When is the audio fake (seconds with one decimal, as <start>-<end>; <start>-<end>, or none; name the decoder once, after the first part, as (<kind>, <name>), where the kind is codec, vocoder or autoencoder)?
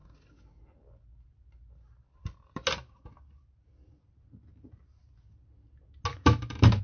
6.1-6.8 (autoencoder, DAC-VAE)